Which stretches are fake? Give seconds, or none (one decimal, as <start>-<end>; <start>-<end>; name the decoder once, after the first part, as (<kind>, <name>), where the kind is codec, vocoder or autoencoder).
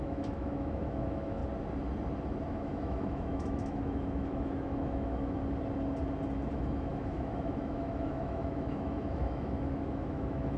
0.0-1.4 (autoencoder, DAC-VAE); 2.5-5.4; 6.5-10.6